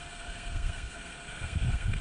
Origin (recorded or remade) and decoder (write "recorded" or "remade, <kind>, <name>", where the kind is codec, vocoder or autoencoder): remade, codec, SNAC